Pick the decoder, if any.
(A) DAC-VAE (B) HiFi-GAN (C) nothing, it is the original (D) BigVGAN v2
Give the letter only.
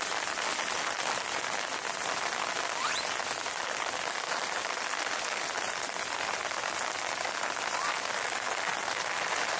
C